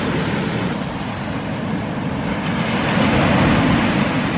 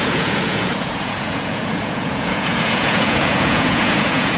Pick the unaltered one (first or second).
first